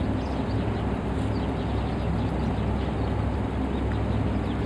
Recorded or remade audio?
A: recorded